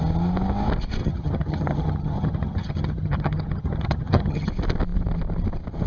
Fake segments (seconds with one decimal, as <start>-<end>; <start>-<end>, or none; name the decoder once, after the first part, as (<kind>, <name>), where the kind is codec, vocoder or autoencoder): 1.0-4.5 (vocoder, HiFi-GAN)